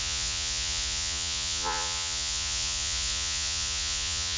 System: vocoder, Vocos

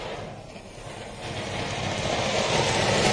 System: none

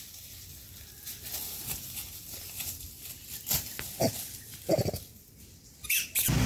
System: none